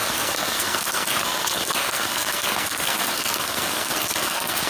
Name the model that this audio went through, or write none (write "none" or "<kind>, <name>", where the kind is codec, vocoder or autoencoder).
codec, SNAC